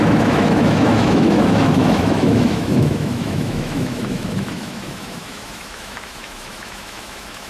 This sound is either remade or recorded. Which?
remade